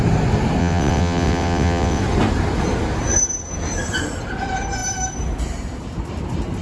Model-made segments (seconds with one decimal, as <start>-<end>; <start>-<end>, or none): 0.6-2.0